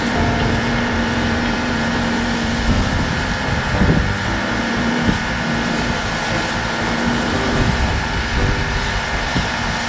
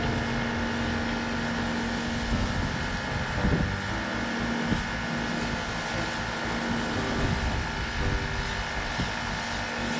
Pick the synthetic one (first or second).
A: first